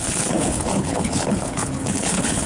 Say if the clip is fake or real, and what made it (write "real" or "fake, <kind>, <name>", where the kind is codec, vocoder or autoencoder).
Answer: fake, codec, HILCodec